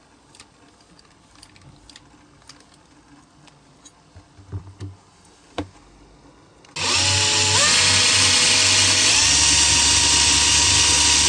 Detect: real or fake real